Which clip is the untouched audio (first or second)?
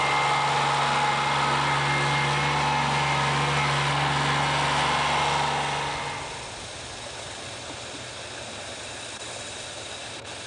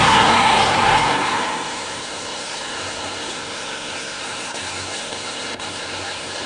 first